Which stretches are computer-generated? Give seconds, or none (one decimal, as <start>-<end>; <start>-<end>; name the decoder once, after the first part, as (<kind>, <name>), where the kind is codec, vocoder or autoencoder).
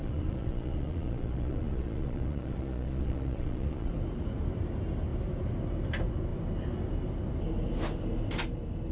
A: 0.0-3.9 (vocoder, Vocos)